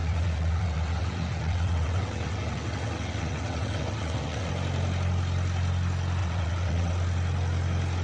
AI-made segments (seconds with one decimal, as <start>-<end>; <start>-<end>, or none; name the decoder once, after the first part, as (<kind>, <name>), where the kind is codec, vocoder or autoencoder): 0.0-4.5 (vocoder, WaveNeXt); 6.2-6.9